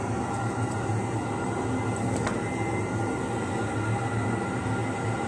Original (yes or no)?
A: yes